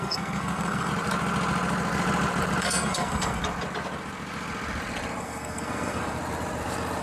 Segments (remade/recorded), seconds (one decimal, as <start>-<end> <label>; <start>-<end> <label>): 0.0-0.9 remade; 0.9-2.6 recorded; 2.6-3.4 remade; 3.4-5.2 recorded; 5.2-6.2 remade; 6.2-7.0 recorded